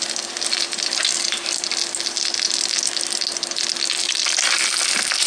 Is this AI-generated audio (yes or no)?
no